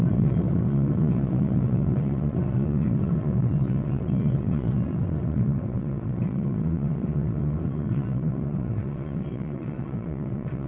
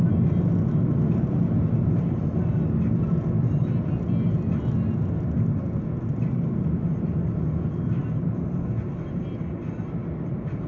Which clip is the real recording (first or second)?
second